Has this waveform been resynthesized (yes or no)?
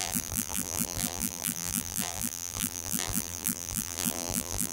yes